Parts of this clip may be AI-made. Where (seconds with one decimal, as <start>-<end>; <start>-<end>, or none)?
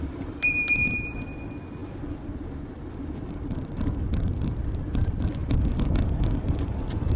0.0-7.2